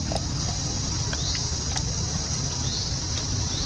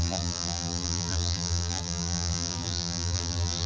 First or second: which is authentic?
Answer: first